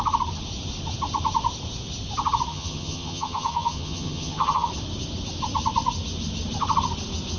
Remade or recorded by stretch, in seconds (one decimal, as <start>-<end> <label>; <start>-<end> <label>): 0.0-2.5 recorded; 2.5-4.7 remade; 4.7-7.4 recorded